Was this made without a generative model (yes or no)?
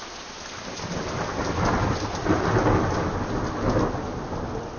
yes